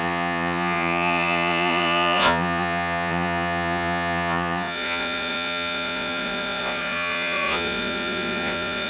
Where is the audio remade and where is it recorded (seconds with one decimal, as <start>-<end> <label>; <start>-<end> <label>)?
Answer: 0.0-8.9 remade